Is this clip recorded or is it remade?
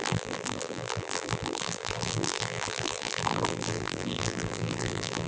remade